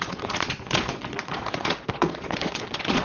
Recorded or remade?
remade